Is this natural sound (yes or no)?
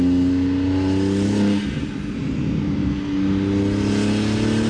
yes